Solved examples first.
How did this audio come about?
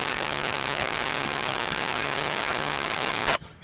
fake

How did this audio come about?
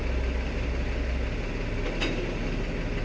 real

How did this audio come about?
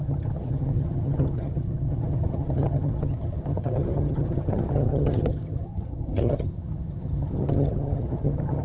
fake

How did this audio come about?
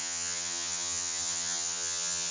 fake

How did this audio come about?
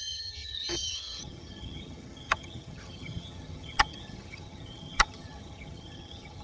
fake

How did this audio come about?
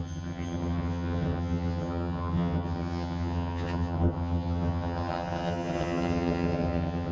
fake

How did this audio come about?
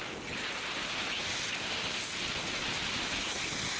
real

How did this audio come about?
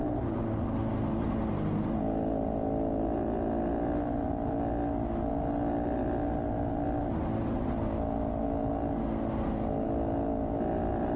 real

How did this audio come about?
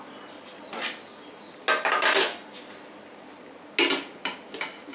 real